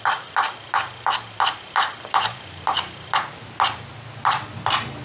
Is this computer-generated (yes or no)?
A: no